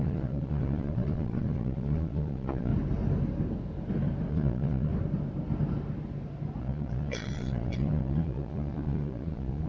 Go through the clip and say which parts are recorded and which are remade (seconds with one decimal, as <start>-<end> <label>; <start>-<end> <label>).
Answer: 0.0-2.7 remade; 2.7-4.3 recorded; 4.3-4.9 remade; 4.9-6.6 recorded; 6.6-9.7 remade

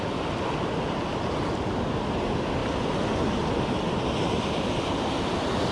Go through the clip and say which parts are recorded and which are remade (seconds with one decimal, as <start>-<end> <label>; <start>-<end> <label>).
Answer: 0.0-5.7 recorded

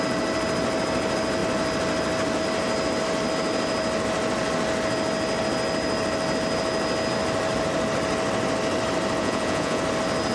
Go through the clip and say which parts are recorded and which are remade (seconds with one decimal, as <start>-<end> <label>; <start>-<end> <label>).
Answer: 0.0-9.2 recorded; 9.2-9.8 remade; 9.8-10.3 recorded